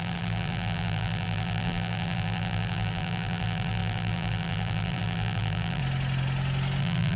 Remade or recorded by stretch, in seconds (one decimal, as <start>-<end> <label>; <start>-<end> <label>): 0.0-5.8 remade; 5.8-6.8 recorded; 6.8-7.2 remade